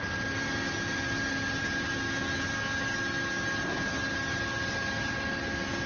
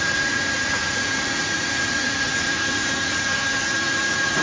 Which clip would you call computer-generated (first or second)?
second